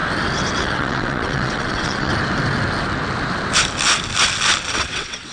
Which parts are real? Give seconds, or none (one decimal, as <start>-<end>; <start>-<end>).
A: 0.0-0.6; 2.1-4.7